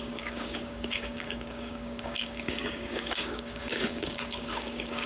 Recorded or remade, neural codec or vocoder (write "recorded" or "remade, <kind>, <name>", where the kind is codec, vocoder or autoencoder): remade, codec, DAC